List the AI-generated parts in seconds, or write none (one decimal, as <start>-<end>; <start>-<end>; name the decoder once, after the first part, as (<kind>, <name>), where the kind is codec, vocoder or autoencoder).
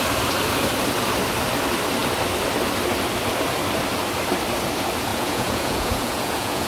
5.1-6.7 (vocoder, Vocos)